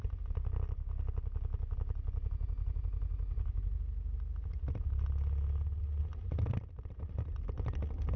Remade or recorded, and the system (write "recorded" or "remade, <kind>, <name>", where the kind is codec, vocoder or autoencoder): recorded